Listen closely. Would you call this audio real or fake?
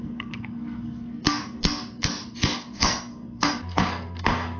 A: fake